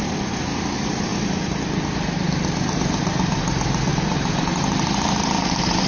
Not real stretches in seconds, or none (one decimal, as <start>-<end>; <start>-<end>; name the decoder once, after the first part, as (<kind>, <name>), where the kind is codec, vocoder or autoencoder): none